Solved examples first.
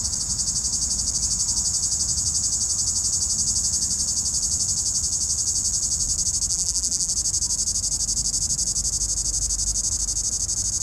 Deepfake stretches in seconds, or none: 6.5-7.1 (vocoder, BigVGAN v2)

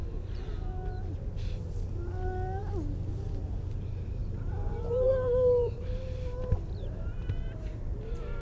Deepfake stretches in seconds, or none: 4.2-8.4 (vocoder, BigVGAN v2)

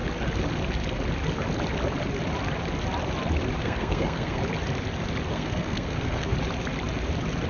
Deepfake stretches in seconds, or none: 3.6-4.4 (codec, SNAC); 5.3-6.3

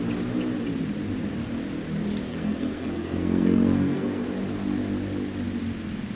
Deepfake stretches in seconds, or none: 2.3-4.2 (codec, SNAC)